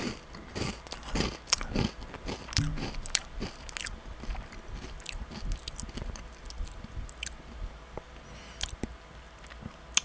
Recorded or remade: recorded